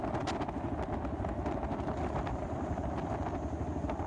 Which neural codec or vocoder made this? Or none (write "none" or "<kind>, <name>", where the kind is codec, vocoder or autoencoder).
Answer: none